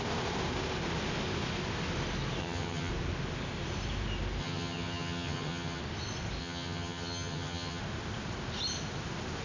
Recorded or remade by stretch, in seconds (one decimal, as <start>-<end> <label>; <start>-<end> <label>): 0.0-2.4 recorded; 2.4-2.9 remade; 2.9-4.4 recorded; 4.4-5.8 remade; 5.8-6.4 recorded; 6.4-7.8 remade; 7.8-9.4 recorded

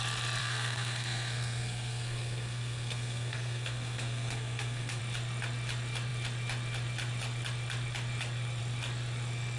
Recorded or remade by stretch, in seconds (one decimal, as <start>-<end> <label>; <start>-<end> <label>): 0.0-0.4 recorded; 0.4-5.0 remade; 5.0-9.6 recorded